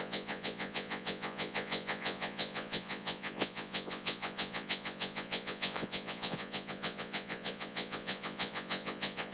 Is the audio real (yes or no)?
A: no